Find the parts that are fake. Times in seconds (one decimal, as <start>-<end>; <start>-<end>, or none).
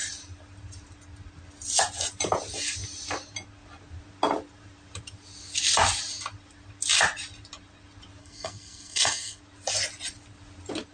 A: 8.2-9.4